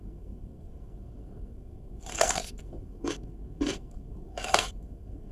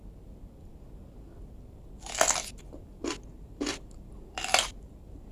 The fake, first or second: first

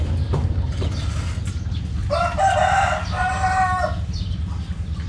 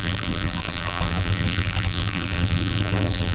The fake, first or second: second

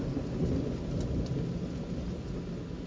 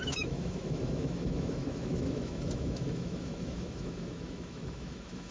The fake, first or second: second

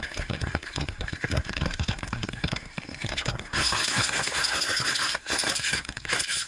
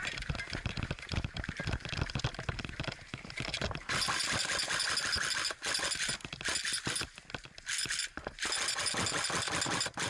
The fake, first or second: first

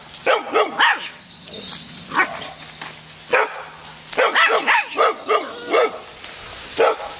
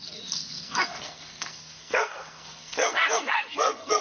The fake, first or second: second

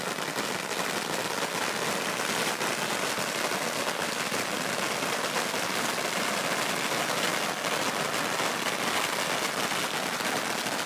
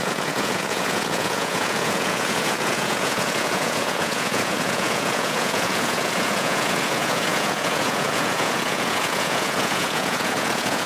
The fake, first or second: second